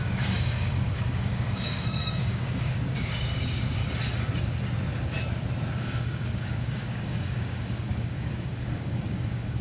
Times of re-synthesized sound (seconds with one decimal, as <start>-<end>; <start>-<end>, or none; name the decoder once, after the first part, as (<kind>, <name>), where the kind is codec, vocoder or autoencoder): 0.0-3.8 (codec, DAC); 5.7-9.6